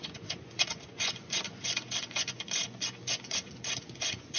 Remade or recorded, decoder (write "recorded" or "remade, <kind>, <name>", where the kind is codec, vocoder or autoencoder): remade, vocoder, Vocos